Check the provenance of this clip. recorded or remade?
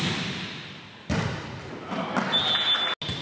recorded